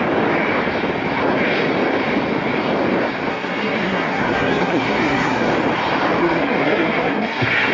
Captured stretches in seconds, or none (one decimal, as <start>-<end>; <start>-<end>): 0.0-3.3; 5.5-6.2